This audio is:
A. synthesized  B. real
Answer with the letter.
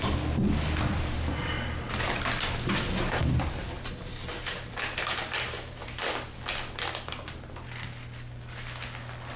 B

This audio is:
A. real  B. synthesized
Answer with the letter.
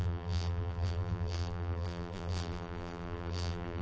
B